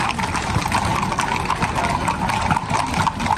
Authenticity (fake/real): real